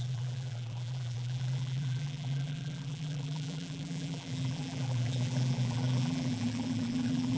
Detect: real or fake fake